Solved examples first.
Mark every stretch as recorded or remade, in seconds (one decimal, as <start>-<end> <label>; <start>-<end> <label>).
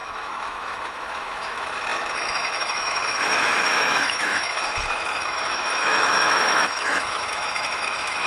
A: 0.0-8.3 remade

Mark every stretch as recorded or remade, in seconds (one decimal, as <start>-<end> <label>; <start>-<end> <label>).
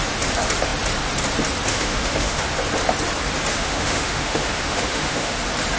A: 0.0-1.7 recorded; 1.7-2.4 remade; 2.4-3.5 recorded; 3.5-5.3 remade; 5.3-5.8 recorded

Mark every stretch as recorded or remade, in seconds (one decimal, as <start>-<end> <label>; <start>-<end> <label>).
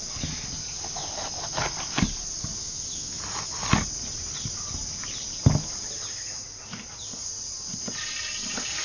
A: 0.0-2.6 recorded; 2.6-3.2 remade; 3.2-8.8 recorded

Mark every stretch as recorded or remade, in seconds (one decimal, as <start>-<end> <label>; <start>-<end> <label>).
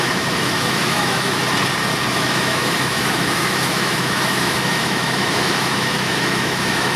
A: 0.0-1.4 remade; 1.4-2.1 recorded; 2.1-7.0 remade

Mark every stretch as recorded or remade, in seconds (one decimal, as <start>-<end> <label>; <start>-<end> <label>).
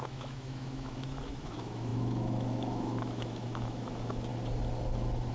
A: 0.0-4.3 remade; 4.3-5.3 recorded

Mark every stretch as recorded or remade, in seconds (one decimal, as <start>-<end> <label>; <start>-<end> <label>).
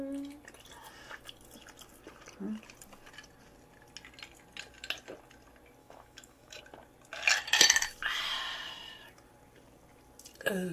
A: 0.0-5.8 recorded; 5.8-6.6 remade; 6.6-10.7 recorded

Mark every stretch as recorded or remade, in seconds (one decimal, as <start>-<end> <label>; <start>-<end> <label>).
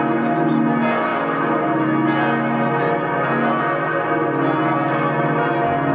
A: 0.0-5.9 recorded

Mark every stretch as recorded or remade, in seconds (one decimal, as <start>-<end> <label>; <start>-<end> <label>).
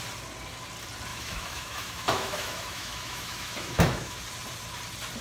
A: 0.0-1.1 recorded; 1.1-4.2 remade; 4.2-5.2 recorded